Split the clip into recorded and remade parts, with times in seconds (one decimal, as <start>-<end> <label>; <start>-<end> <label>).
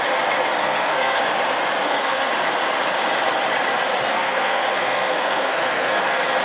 0.0-0.6 recorded; 0.6-1.2 remade; 1.2-1.8 recorded; 1.8-2.3 remade; 2.3-4.1 recorded; 4.1-6.0 remade; 6.0-6.4 recorded